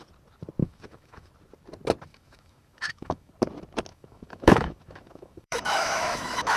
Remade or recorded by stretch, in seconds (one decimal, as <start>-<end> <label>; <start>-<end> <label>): 0.0-0.6 recorded; 0.6-1.3 remade; 1.3-2.1 recorded; 2.1-3.3 remade; 3.3-3.9 recorded; 3.9-6.6 remade